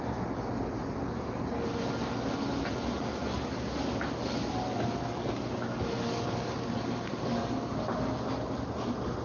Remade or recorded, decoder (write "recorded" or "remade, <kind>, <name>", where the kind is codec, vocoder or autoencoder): recorded